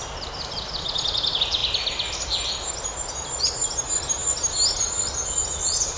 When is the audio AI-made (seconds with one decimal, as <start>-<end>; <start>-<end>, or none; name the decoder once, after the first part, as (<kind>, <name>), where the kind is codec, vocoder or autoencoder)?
none